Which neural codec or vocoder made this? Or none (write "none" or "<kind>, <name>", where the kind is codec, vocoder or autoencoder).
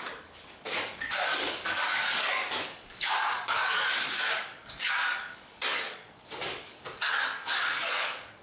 codec, DAC